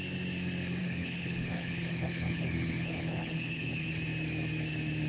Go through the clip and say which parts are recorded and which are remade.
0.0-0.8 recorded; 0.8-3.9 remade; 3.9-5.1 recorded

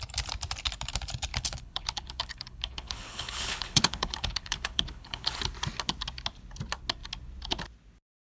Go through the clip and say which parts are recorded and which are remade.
0.0-1.3 recorded; 1.3-5.4 remade; 5.4-8.3 recorded

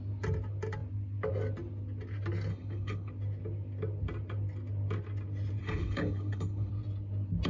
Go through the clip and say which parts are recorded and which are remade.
0.0-2.5 recorded; 2.5-3.1 remade; 3.1-5.6 recorded; 5.6-6.7 remade; 6.7-7.5 recorded